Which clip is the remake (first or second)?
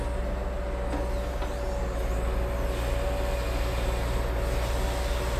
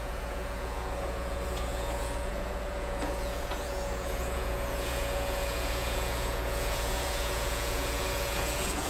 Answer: second